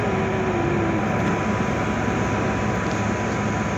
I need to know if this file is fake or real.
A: real